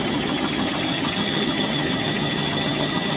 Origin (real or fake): fake